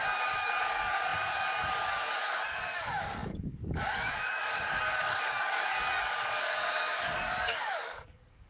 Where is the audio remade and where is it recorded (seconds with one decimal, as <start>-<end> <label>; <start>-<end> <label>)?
0.0-8.5 remade